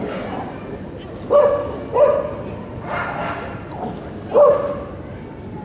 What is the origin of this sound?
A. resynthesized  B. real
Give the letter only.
B